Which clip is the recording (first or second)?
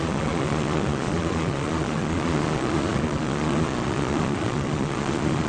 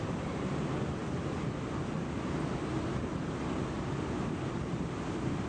second